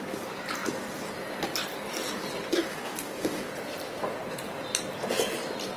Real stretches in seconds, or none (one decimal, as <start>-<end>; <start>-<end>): 0.0-2.5; 3.5-5.8